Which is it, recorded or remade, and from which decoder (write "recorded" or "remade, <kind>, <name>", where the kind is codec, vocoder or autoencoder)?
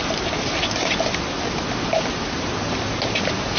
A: recorded